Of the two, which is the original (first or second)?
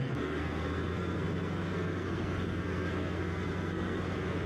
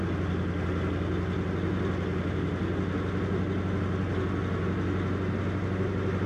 second